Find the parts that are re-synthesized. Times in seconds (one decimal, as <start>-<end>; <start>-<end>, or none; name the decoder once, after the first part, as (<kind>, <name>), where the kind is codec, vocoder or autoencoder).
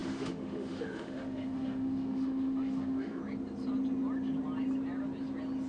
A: 0.0-3.2 (autoencoder, DAC-VAE)